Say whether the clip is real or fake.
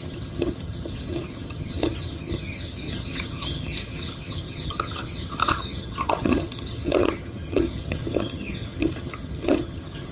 fake